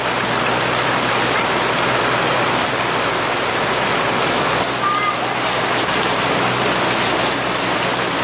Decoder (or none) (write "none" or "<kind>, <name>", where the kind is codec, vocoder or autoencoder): none